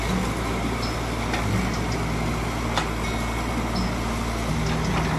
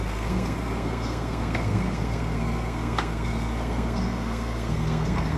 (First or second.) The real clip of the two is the first